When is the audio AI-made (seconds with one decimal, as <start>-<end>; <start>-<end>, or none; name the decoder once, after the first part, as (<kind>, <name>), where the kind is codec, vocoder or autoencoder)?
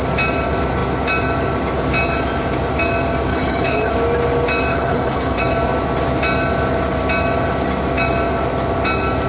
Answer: 3.3-3.9 (codec, HILCodec); 4.7-5.4